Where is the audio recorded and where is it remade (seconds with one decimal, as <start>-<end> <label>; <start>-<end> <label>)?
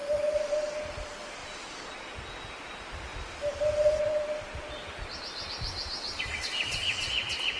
0.0-7.6 recorded